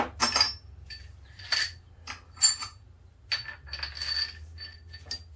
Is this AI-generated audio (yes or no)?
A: no